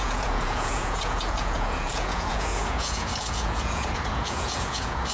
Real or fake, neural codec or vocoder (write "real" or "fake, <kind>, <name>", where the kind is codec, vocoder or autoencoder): fake, vocoder, Vocos